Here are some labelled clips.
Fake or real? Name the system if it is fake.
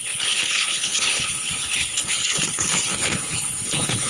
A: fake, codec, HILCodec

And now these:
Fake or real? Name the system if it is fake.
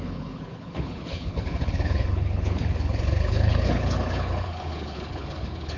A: fake, codec, HILCodec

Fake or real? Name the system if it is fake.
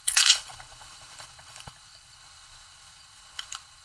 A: fake, codec, HILCodec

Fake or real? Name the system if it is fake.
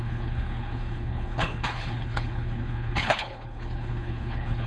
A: fake, codec, HILCodec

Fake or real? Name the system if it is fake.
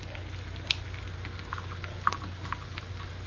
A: real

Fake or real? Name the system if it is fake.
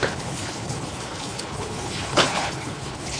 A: fake, codec, HILCodec